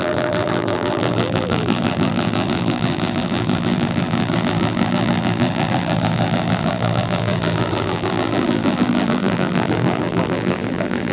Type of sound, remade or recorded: remade